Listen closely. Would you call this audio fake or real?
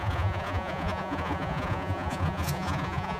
fake